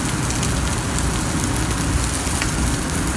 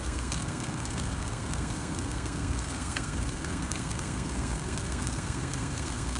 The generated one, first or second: second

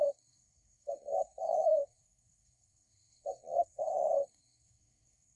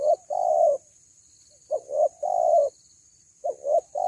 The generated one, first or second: first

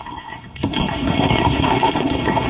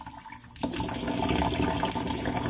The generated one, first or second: first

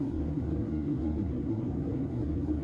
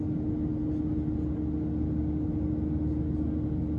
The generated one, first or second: first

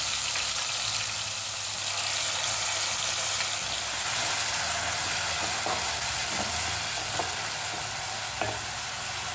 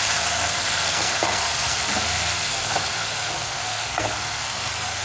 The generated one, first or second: second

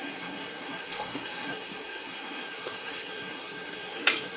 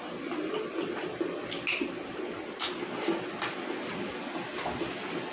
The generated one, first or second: first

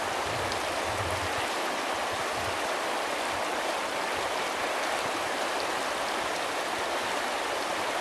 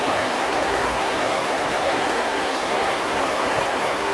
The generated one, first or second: second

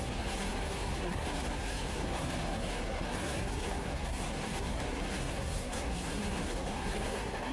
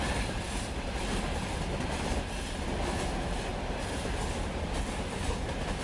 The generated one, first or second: first